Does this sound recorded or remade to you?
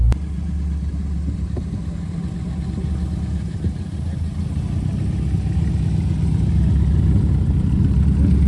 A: recorded